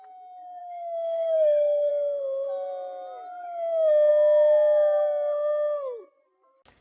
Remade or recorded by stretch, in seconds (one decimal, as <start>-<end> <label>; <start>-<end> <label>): 0.0-0.6 recorded; 0.6-1.9 remade; 1.9-6.8 recorded